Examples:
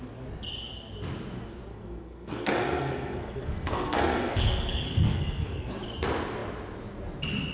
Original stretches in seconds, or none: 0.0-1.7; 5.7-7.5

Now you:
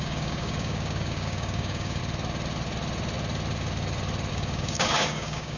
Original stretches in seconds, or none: 2.0-4.3

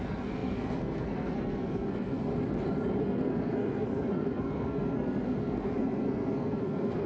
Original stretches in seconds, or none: 2.3-3.0